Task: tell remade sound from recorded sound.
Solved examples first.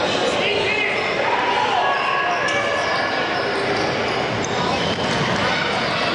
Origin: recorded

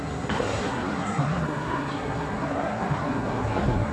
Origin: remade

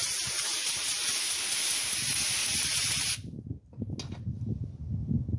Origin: recorded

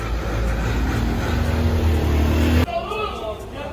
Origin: recorded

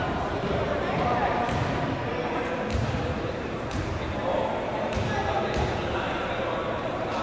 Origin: remade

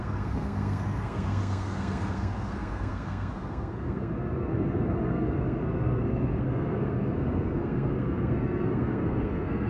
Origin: remade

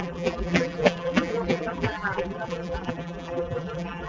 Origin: remade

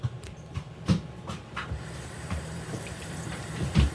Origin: remade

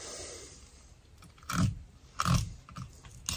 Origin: recorded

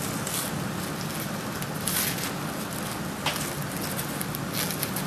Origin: recorded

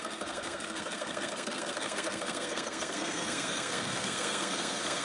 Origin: remade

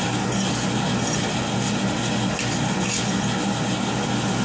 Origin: recorded